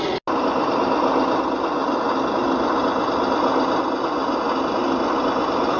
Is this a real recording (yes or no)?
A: yes